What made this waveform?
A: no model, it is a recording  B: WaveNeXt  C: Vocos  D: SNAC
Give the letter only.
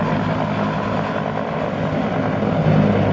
A